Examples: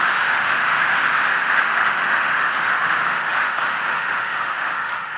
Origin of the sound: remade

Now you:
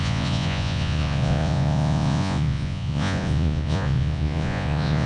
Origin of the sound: remade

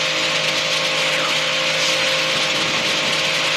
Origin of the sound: recorded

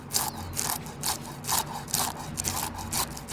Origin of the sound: recorded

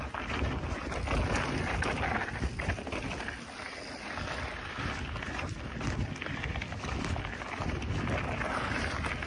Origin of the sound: recorded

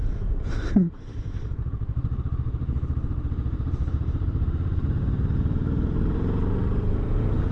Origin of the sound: remade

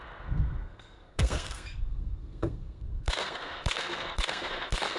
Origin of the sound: remade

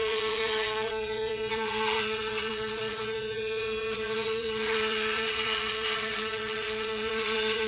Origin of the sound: remade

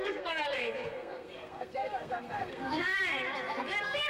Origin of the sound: remade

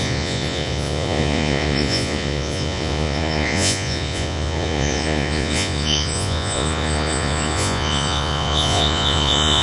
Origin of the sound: remade